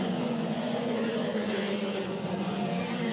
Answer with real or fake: fake